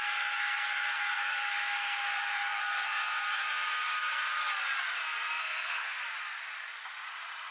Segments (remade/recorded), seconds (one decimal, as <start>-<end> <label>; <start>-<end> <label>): 0.0-4.5 remade; 4.5-5.4 recorded; 5.4-6.0 remade; 6.0-7.5 recorded